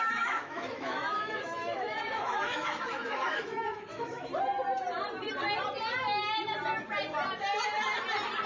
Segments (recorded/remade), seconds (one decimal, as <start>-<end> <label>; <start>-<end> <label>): 0.0-4.3 remade; 4.3-8.5 recorded